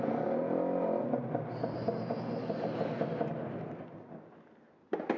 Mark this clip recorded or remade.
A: recorded